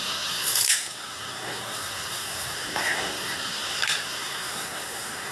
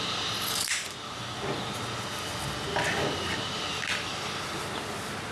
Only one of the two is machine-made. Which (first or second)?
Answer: first